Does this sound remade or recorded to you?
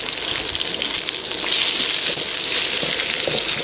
recorded